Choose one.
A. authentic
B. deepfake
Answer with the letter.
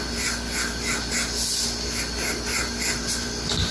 A